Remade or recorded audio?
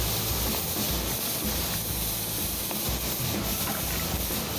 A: recorded